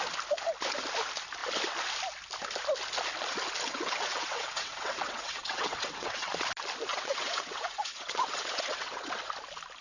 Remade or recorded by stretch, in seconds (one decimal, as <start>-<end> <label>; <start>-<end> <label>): 0.0-3.7 recorded; 3.7-6.3 remade; 6.3-6.9 recorded; 6.9-9.2 remade; 9.2-9.8 recorded